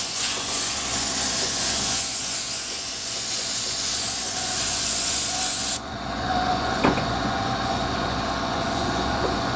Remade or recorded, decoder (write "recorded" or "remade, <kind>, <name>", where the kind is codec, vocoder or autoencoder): remade, vocoder, Vocos